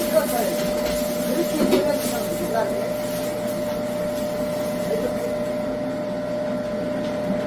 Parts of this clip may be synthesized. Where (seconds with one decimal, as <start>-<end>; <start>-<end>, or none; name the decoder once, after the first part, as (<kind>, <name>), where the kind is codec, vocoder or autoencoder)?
none